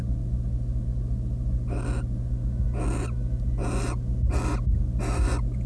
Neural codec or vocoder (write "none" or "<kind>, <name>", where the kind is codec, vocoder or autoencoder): none